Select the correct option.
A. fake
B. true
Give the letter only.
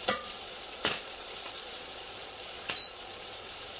A